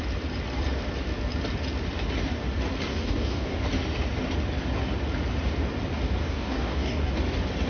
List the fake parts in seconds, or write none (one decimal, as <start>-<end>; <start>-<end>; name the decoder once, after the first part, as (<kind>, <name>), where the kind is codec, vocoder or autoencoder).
2.9-3.6 (codec, DAC); 6.2-7.1